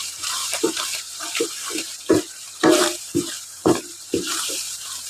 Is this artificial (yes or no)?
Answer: yes